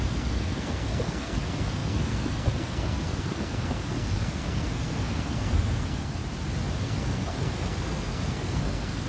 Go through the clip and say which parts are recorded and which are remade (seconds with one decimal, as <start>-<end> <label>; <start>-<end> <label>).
0.0-6.2 remade; 6.2-6.8 recorded; 6.8-9.1 remade